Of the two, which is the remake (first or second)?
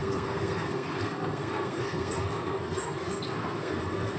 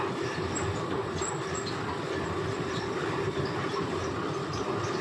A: first